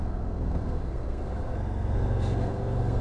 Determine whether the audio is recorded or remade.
remade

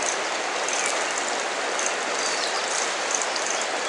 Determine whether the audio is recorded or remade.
recorded